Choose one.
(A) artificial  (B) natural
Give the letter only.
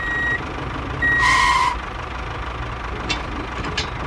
B